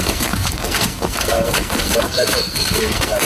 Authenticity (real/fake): fake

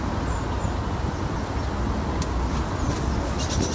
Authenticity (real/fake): real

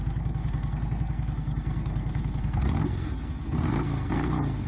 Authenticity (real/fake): fake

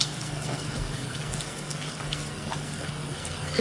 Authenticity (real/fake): fake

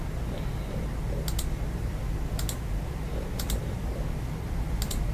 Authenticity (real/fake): real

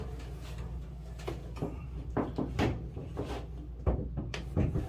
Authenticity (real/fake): real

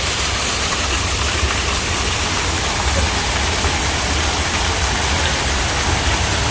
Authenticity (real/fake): real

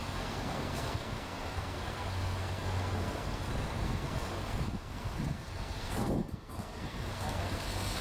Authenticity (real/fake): fake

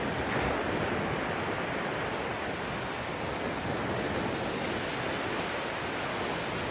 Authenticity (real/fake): real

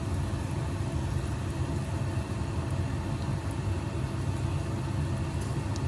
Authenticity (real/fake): real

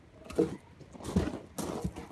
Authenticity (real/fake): real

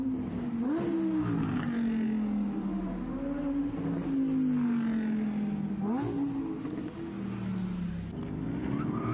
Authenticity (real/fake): real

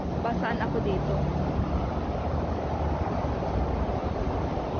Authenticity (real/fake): real